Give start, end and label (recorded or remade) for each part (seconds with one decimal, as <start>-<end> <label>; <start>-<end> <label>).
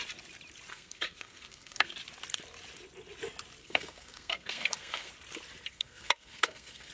0.0-0.7 recorded; 0.7-1.9 remade; 1.9-3.6 recorded; 3.6-5.1 remade; 5.1-5.7 recorded; 5.7-6.9 remade